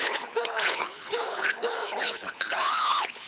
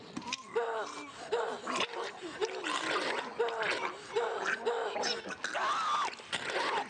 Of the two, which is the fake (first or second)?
first